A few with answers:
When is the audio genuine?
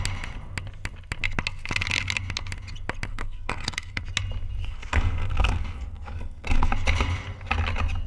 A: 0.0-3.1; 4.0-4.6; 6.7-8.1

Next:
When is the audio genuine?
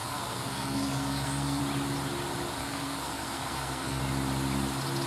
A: 1.6-2.6; 4.0-5.1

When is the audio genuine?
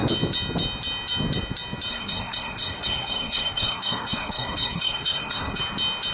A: 0.0-1.9; 5.6-6.1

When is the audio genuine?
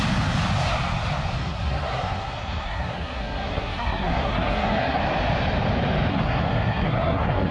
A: 0.0-1.4; 5.0-6.1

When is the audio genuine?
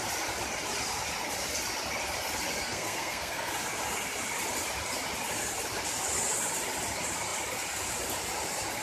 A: 0.0-2.6; 3.5-8.8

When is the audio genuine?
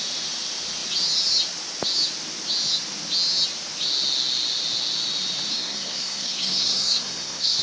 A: 0.0-5.5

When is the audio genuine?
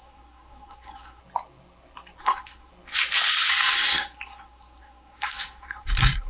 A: 1.2-2.2; 2.7-3.5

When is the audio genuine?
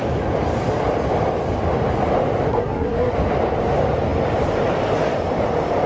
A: 0.0-2.5; 3.1-5.9